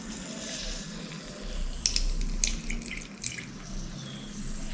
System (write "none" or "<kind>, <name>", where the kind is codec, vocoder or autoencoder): none